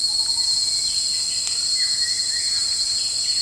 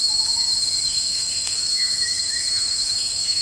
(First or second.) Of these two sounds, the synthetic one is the second